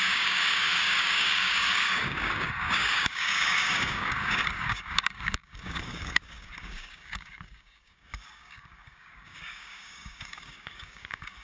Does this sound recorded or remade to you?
remade